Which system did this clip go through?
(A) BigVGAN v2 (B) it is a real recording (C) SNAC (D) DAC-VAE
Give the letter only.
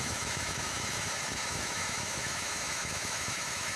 D